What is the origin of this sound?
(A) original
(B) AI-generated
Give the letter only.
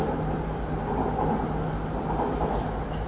A